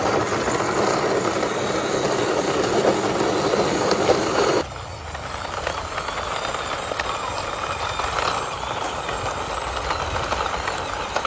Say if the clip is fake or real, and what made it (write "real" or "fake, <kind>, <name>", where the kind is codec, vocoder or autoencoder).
real